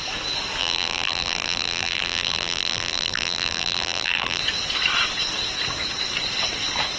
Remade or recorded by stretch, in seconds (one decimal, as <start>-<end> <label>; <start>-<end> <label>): 0.0-0.6 recorded; 0.6-4.4 remade; 4.4-7.0 recorded